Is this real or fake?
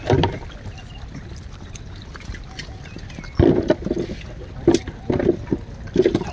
real